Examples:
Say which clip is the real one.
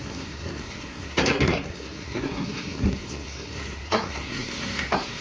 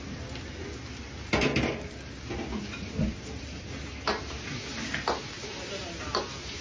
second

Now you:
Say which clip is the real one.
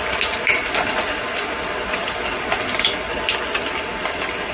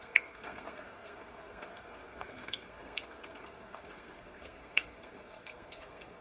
first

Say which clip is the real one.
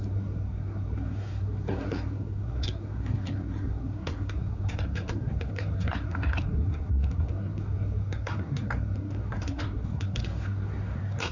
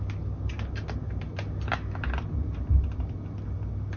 second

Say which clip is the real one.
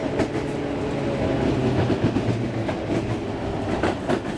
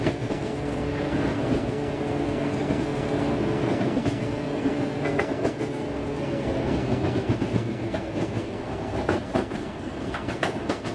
first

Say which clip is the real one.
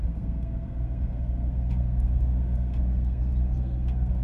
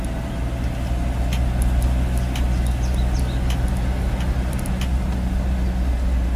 second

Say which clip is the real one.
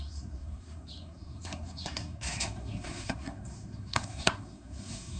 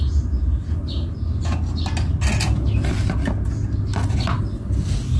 second